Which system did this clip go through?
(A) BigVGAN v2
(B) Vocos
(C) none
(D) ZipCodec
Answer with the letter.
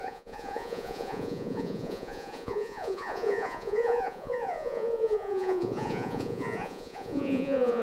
B